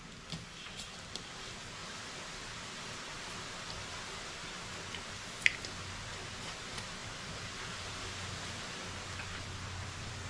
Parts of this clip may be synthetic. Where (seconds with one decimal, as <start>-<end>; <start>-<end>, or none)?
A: none